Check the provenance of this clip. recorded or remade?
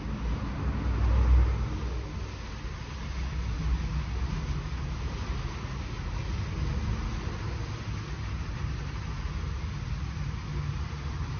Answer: recorded